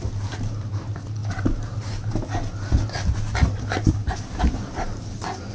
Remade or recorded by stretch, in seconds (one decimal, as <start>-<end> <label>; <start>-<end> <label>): 0.0-1.2 recorded; 1.2-2.1 remade; 2.1-4.0 recorded; 4.0-4.7 remade; 4.7-5.5 recorded